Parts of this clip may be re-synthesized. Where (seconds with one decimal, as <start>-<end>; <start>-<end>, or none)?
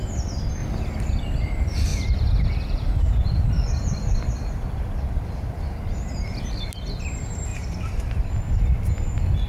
1.9-6.9; 7.5-8.3